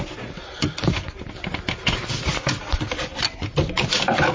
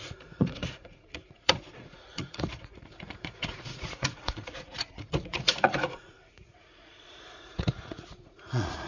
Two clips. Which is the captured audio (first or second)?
first